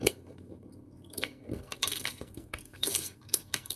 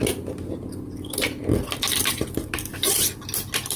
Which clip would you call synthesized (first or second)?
first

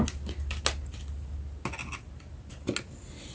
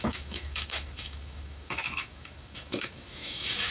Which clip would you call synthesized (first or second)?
second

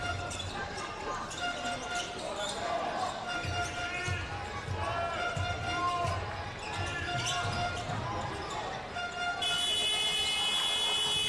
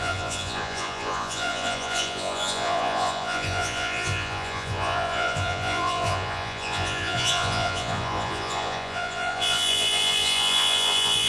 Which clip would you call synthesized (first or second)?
second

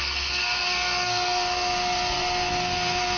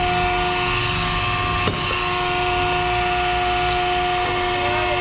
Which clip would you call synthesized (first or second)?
first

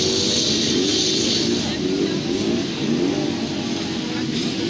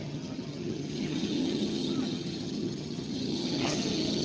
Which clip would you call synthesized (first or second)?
second